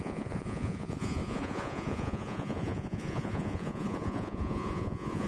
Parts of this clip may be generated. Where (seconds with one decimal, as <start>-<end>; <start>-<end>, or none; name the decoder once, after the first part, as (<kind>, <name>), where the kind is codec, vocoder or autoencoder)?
0.0-5.3 (vocoder, Vocos)